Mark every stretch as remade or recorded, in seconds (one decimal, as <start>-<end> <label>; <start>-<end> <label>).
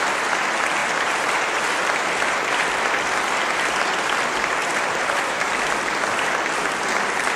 0.0-0.8 recorded; 0.8-1.6 remade; 1.6-4.6 recorded; 4.6-5.5 remade; 5.5-7.4 recorded